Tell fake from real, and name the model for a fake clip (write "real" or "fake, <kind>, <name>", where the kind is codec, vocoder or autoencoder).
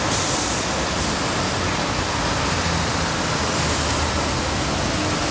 real